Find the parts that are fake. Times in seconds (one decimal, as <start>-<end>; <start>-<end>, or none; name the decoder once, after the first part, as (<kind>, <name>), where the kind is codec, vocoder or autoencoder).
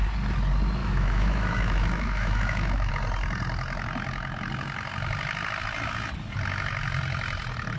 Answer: 0.8-2.9 (autoencoder, DAC-VAE)